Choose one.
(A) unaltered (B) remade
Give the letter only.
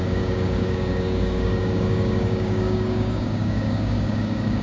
B